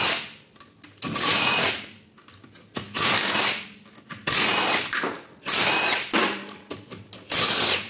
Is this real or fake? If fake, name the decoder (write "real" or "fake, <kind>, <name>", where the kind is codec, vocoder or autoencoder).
real